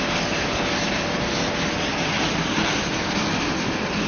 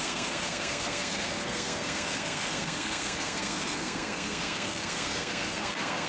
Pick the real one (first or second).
first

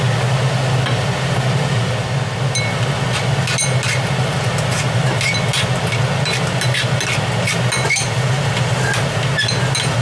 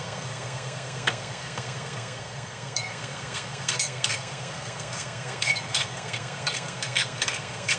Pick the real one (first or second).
first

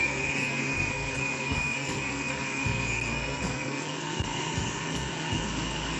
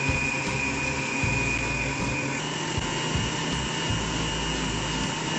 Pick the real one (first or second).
second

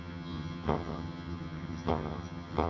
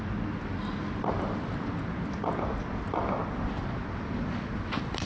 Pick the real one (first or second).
second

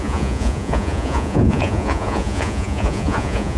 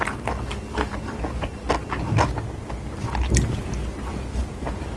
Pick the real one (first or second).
second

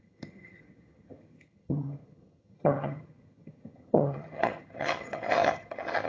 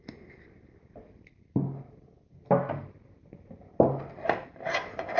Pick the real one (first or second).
second